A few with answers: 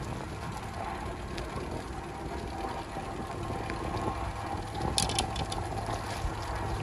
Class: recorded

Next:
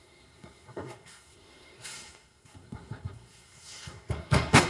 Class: remade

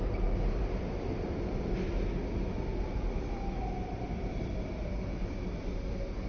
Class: recorded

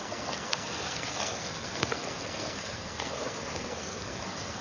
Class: remade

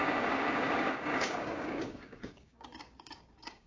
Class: remade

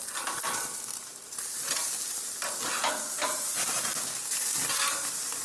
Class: recorded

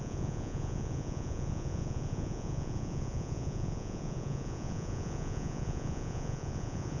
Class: remade